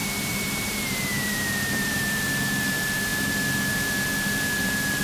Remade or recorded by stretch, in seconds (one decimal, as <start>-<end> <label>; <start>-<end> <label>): 0.0-2.3 remade; 2.3-5.0 recorded